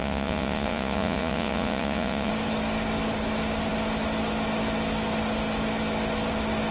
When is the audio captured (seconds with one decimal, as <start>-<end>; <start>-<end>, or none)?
2.3-6.7